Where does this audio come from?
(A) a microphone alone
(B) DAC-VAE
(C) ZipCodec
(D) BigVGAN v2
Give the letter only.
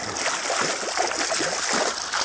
A